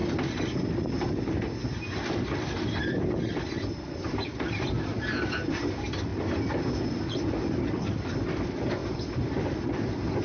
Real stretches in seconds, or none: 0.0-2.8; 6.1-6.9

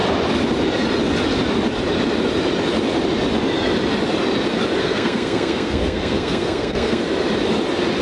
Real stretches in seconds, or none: 0.0-4.8; 7.0-8.0

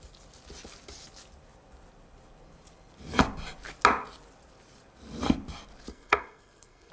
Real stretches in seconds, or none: 0.0-5.9